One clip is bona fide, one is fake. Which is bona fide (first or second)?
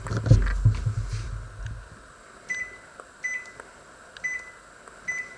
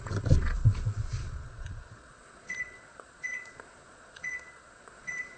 first